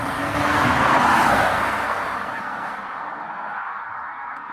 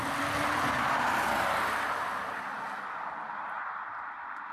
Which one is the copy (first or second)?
first